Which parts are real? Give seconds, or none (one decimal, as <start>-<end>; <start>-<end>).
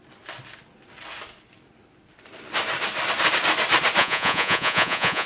0.0-4.0